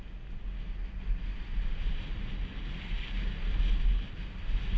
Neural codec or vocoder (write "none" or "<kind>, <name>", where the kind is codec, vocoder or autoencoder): none